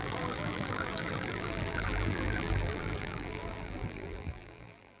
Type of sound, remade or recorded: remade